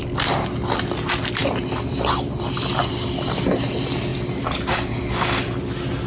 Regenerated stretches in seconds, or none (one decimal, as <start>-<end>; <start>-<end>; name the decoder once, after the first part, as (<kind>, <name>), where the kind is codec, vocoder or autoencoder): none